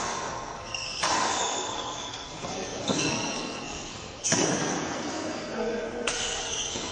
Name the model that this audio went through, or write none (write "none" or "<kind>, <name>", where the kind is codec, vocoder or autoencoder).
codec, SNAC